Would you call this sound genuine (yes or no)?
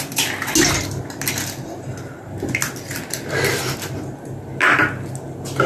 yes